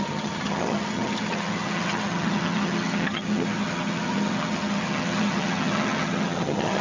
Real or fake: fake